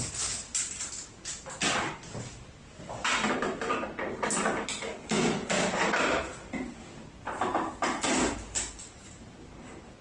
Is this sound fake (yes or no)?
no